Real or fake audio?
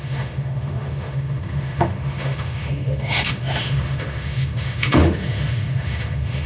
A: fake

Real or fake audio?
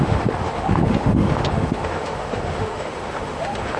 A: fake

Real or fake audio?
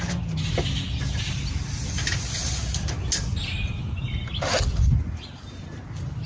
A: real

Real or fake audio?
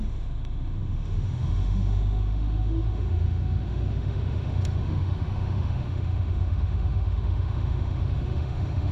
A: fake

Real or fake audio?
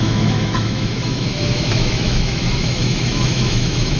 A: fake